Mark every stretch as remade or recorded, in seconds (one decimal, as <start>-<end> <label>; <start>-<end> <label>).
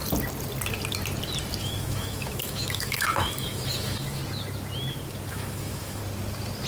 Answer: 0.0-1.6 recorded; 1.6-4.2 remade; 4.2-5.3 recorded; 5.3-6.0 remade; 6.0-6.7 recorded